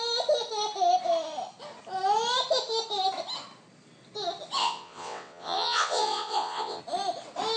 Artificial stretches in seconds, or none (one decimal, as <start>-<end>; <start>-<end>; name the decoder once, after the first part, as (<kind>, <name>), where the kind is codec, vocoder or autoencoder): 4.6-6.8 (vocoder, WaveNeXt)

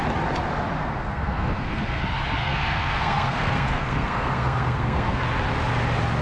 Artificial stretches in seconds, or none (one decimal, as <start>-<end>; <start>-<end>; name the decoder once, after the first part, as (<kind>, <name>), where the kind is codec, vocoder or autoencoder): 0.8-2.0 (codec, SNAC); 2.4-5.2

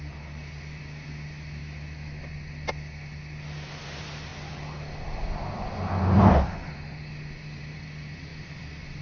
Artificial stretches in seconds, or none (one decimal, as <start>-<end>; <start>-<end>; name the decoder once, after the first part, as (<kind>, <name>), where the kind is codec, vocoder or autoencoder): 1.6-2.3 (autoencoder, DAC-VAE)

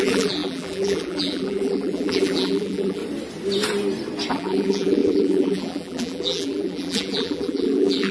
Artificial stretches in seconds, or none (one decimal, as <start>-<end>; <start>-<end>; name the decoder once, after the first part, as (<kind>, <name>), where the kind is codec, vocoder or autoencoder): 0.0-3.0 (vocoder, BigVGAN v2); 4.3-8.1

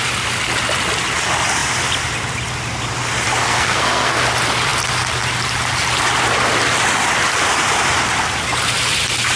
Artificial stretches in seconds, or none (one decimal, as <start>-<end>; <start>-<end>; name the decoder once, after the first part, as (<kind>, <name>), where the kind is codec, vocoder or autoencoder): 3.4-4.2 (codec, SNAC)

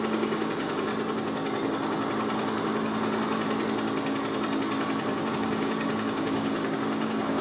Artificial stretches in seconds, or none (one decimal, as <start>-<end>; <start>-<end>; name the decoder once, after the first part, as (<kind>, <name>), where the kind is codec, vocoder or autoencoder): 0.0-0.9 (codec, DAC); 5.3-7.4

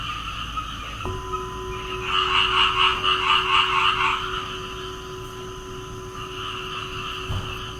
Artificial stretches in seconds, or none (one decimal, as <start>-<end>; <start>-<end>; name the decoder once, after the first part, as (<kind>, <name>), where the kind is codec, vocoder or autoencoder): none

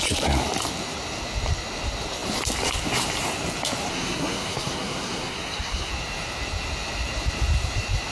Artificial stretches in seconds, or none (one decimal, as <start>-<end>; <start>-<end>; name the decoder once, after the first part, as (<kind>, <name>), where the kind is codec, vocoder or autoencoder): 3.9-5.9 (codec, SNAC)